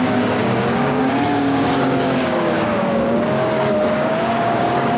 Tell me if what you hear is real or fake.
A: fake